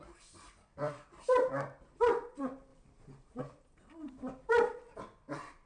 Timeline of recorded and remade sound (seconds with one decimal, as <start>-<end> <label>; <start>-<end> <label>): 0.0-2.7 remade; 2.7-3.4 recorded; 3.4-4.0 remade; 4.0-4.5 recorded; 4.5-5.7 remade